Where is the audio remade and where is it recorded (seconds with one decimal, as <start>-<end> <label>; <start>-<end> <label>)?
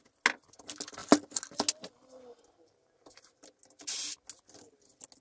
0.0-5.2 recorded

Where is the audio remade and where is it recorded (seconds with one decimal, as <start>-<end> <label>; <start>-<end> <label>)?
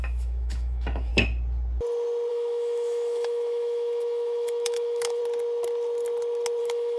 0.0-1.1 remade; 1.1-2.3 recorded; 2.3-5.2 remade; 5.2-6.6 recorded; 6.6-7.0 remade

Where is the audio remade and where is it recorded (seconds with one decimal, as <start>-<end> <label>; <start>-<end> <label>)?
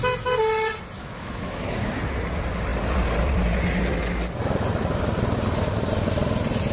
0.0-1.0 recorded; 1.0-2.0 remade; 2.0-6.7 recorded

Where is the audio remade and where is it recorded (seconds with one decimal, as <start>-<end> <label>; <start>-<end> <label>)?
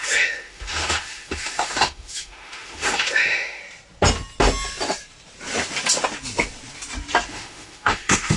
0.0-3.6 remade; 3.6-7.3 recorded; 7.3-8.4 remade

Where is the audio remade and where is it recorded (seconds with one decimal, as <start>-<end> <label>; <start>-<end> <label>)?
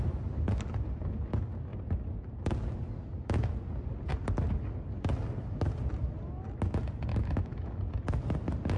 0.0-7.1 recorded; 7.1-7.8 remade; 7.8-8.8 recorded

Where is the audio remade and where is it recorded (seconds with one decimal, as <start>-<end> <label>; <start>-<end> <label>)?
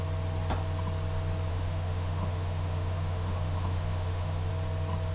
0.0-1.5 recorded; 1.5-4.5 remade; 4.5-5.1 recorded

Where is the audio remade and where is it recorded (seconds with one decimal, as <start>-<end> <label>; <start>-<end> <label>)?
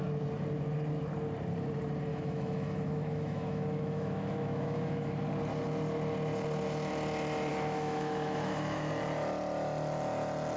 0.0-2.1 recorded; 2.1-5.1 remade; 5.1-7.5 recorded; 7.5-8.9 remade; 8.9-10.6 recorded